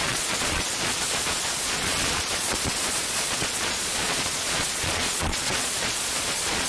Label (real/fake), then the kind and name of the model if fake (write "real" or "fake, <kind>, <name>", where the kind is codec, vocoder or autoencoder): fake, vocoder, Vocos